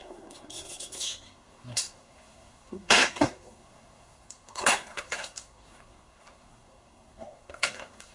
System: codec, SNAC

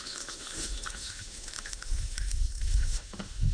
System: autoencoder, DAC-VAE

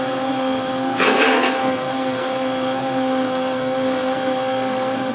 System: codec, SNAC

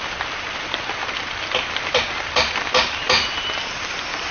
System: vocoder, BigVGAN v2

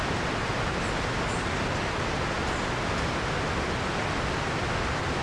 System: none